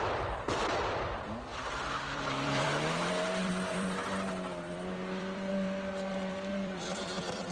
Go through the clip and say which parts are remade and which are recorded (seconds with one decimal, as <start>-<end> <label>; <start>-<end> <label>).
0.0-7.5 remade

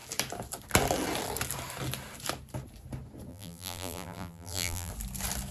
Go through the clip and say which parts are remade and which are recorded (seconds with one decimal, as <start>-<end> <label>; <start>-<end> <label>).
0.0-3.3 recorded; 3.3-4.9 remade; 4.9-5.5 recorded

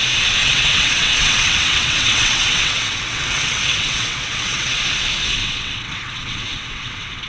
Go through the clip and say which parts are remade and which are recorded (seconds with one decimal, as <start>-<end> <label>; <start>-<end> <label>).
0.0-0.4 recorded; 0.4-4.8 remade; 4.8-5.4 recorded; 5.4-7.3 remade

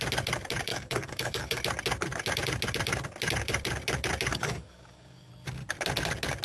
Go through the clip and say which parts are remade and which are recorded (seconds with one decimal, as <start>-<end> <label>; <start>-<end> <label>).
0.0-0.7 recorded; 0.7-1.6 remade; 1.6-4.3 recorded; 4.3-5.3 remade; 5.3-6.4 recorded

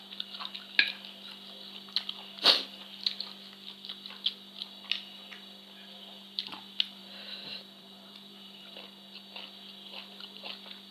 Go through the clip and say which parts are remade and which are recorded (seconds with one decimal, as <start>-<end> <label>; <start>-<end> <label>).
0.0-7.0 recorded; 7.0-8.6 remade; 8.6-10.9 recorded

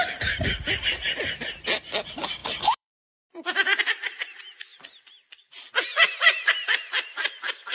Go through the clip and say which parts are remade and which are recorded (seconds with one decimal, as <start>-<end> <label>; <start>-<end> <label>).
0.0-2.4 recorded; 2.4-3.8 remade; 3.8-4.7 recorded; 4.7-7.7 remade

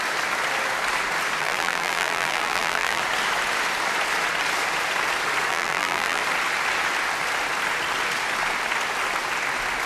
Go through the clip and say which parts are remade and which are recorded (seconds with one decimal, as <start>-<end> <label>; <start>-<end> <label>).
0.0-1.4 recorded; 1.4-3.0 remade; 3.0-5.5 recorded; 5.5-6.2 remade; 6.2-9.9 recorded

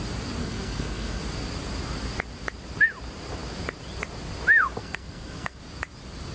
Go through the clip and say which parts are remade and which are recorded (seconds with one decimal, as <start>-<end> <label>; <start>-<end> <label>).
0.0-0.4 recorded; 0.4-1.2 remade; 1.2-4.8 recorded; 4.8-5.6 remade; 5.6-6.3 recorded